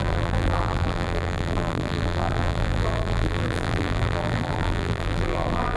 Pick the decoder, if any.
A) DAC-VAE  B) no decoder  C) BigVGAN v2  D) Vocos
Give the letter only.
C